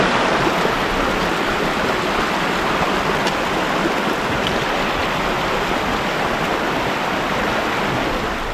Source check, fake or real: real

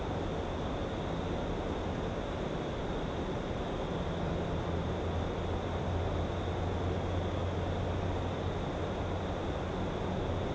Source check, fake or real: real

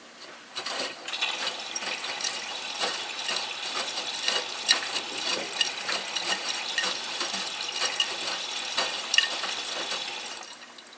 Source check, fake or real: fake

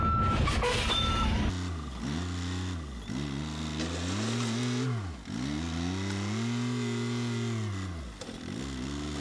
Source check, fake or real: real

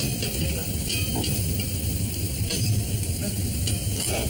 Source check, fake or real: fake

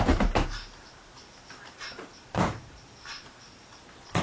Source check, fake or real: fake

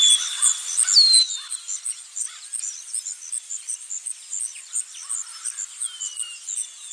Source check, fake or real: real